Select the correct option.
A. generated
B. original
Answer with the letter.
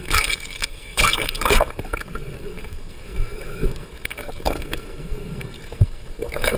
A